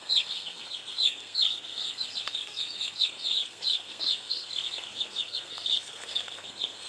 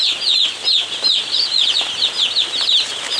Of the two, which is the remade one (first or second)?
first